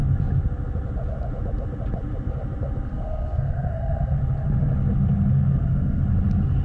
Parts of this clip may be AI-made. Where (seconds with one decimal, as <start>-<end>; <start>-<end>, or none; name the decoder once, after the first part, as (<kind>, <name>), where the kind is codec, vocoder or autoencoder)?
2.9-4.2 (codec, SNAC); 5.3-6.0